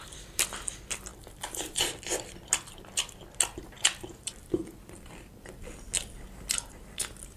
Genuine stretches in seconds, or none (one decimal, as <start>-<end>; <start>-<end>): none